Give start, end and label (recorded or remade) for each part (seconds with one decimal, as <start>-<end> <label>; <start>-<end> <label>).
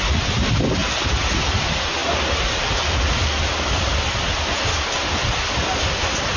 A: 0.0-6.4 recorded